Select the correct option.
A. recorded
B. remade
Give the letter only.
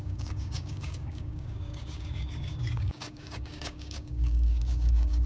B